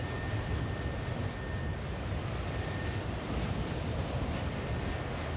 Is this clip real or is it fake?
real